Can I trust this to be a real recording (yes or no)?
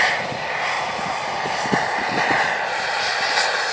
yes